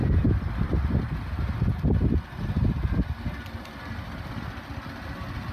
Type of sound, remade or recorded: recorded